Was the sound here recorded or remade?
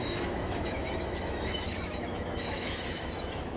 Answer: remade